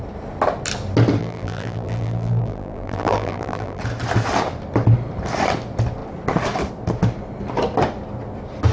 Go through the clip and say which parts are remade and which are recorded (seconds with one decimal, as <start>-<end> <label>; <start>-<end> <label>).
0.0-1.2 recorded; 1.2-3.8 remade; 3.8-8.7 recorded